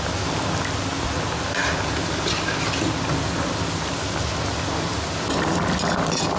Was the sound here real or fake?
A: real